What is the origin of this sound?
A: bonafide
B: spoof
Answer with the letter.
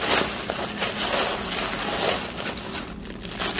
A